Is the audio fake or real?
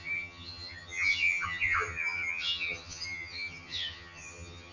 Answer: fake